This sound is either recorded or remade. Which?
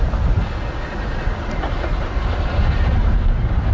recorded